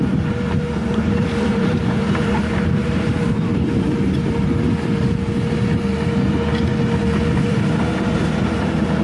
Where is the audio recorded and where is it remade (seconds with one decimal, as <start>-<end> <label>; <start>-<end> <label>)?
0.0-3.5 remade; 3.5-7.3 recorded; 7.3-9.0 remade